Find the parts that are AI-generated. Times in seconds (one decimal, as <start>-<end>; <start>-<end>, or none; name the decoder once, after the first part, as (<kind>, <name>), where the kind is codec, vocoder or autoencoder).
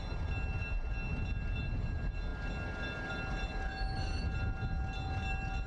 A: none